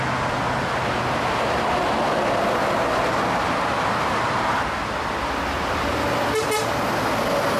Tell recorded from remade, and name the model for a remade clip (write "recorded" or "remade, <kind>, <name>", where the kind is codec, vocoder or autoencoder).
recorded